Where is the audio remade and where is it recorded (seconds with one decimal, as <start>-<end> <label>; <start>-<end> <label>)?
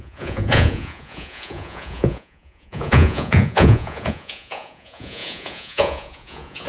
0.0-6.7 remade